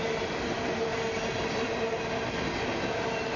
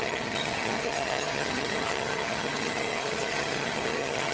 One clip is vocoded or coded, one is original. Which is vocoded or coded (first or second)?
second